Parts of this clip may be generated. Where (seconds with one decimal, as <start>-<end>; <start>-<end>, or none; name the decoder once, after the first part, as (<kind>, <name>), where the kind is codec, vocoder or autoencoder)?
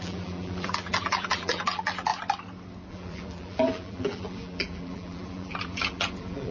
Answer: 0.0-2.1 (vocoder, BigVGAN v2); 2.9-6.5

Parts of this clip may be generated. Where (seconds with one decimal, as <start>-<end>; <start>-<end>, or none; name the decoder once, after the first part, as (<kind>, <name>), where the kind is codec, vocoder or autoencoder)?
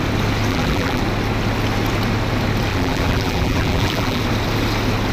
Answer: 0.5-1.0 (vocoder, BigVGAN v2); 2.7-4.2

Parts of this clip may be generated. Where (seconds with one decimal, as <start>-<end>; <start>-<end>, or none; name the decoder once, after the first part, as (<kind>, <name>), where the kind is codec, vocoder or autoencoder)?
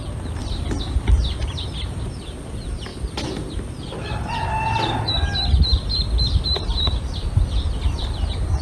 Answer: 0.0-2.9 (vocoder, BigVGAN v2); 6.2-8.6